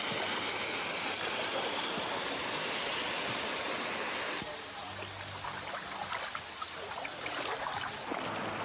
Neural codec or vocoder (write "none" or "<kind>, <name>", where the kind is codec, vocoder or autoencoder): none